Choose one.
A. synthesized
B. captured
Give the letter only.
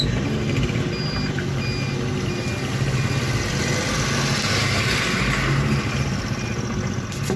B